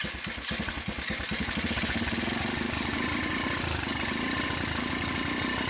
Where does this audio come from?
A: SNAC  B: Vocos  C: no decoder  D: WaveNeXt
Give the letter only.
C